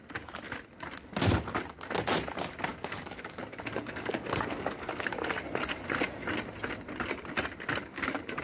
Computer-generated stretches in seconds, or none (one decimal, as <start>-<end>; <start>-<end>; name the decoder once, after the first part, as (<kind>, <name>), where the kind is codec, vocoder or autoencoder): 2.7-5.2 (codec, DAC); 7.8-8.4